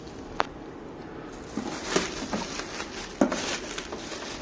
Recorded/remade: recorded